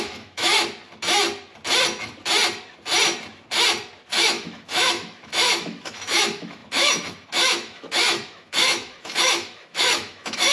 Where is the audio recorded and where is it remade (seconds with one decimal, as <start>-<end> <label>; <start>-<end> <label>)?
0.0-0.5 remade; 0.5-4.1 recorded; 4.1-10.5 remade